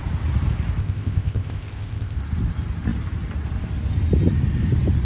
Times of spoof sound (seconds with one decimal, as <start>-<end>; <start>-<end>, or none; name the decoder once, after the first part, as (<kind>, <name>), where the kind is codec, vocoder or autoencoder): 0.8-2.2 (codec, ZipCodec)